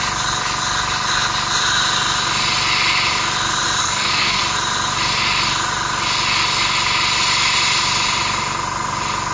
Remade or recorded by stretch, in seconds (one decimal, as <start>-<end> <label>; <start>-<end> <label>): 0.0-3.8 recorded; 3.8-4.4 remade; 4.4-9.3 recorded